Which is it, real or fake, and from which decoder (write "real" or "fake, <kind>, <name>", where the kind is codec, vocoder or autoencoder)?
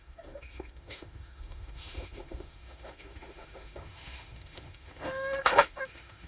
fake, autoencoder, DAC-VAE